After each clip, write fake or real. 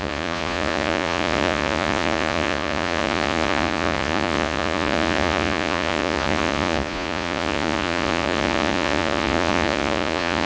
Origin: fake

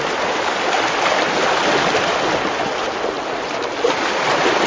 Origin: real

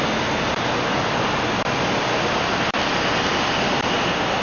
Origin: real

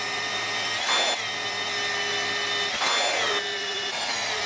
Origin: real